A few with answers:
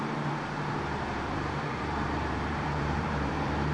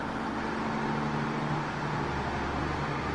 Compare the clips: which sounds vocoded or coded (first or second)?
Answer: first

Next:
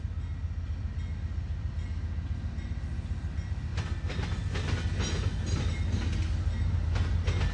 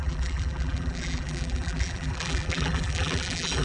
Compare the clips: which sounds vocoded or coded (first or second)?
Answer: second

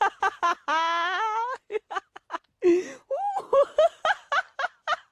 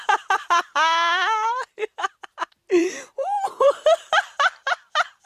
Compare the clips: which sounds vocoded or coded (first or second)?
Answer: second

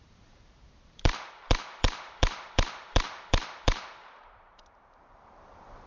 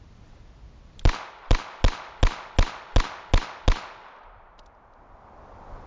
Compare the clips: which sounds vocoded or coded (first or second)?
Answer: first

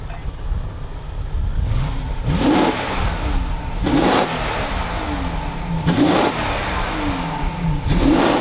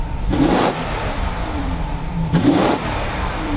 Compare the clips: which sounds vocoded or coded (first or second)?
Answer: second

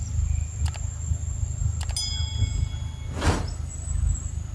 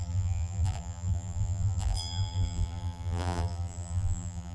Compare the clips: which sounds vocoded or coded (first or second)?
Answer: second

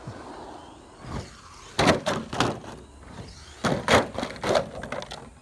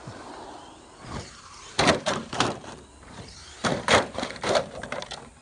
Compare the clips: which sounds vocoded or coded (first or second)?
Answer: second